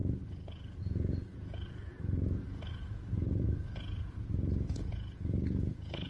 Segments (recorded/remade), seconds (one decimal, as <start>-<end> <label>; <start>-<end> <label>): 0.0-6.1 remade